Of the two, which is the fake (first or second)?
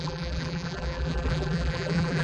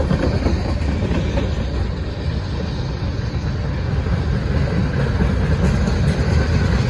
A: first